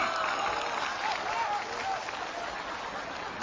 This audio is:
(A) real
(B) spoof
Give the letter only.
A